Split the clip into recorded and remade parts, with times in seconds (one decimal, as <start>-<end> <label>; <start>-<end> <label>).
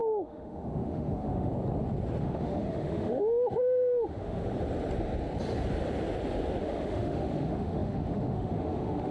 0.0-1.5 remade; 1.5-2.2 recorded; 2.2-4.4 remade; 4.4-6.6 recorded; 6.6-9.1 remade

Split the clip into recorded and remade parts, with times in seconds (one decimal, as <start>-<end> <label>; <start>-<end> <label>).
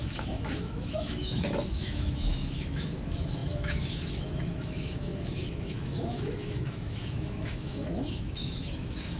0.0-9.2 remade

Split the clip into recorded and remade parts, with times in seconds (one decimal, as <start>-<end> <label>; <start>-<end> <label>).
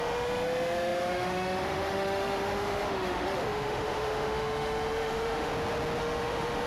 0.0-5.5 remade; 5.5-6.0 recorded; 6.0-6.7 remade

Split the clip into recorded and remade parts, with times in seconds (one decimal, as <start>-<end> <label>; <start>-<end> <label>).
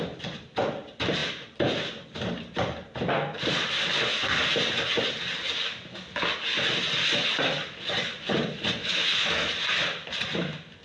0.0-8.8 recorded; 8.8-9.5 remade; 9.5-10.8 recorded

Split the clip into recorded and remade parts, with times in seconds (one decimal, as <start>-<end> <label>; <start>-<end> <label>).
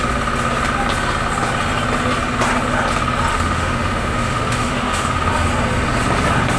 0.0-3.3 recorded; 3.3-5.3 remade; 5.3-6.6 recorded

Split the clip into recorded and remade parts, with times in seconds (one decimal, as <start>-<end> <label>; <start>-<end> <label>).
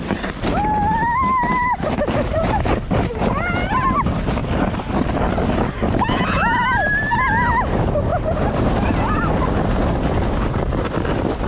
0.0-11.5 recorded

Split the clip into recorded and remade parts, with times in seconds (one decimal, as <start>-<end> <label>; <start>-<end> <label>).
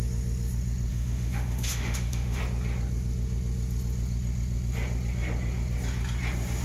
0.0-0.9 recorded; 0.9-2.4 remade; 2.4-6.6 recorded